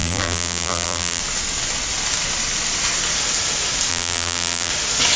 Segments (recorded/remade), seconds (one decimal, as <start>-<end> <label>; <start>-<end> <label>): 0.0-1.2 remade; 1.2-3.9 recorded; 3.9-4.7 remade; 4.7-5.2 recorded